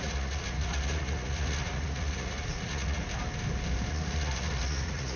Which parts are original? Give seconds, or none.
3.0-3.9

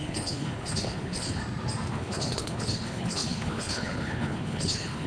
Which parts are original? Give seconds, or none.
1.4-1.9

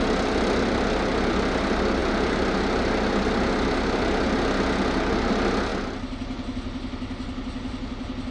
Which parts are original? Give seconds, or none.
0.0-8.3

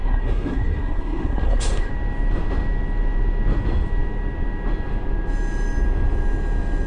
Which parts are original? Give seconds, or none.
1.9-6.9

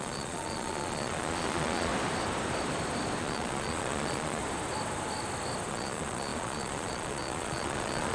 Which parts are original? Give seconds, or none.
1.9-3.2; 4.4-5.7

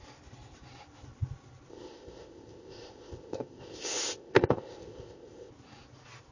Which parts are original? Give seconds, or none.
0.0-1.7; 5.5-6.3

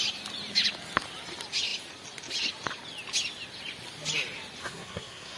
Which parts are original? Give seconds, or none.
0.0-4.6